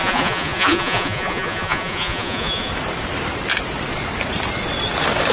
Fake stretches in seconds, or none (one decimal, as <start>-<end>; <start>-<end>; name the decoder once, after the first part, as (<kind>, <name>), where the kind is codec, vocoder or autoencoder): 0.0-2.7 (vocoder, Vocos)